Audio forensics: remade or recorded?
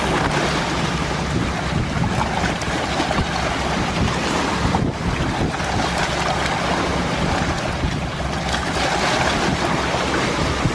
recorded